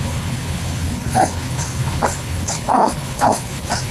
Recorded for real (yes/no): no